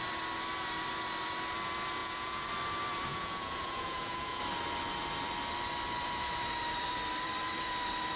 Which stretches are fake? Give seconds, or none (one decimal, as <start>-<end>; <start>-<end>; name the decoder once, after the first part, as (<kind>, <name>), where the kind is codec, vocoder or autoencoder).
2.0-2.5 (vocoder, Vocos); 3.1-4.4